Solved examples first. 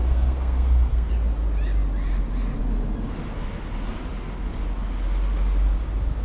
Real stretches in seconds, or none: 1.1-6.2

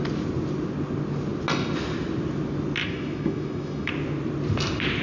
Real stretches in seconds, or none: 0.0-2.8; 3.9-5.0

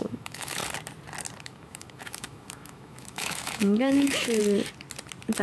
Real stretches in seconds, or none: 0.6-1.4; 4.4-5.4